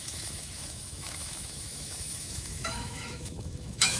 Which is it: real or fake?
fake